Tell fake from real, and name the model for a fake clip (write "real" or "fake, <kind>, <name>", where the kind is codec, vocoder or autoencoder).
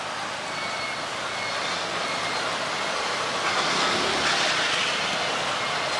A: real